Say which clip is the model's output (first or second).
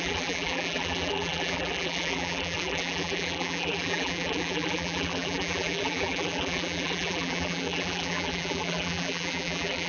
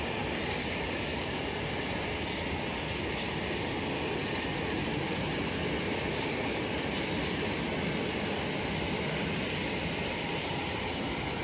first